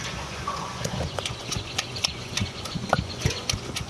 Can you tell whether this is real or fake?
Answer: fake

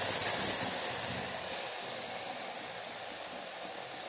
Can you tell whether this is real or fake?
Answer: real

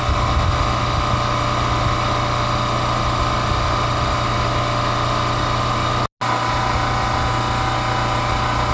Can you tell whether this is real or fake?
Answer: real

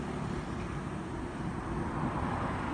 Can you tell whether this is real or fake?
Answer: real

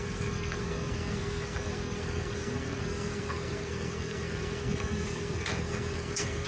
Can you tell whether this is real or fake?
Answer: fake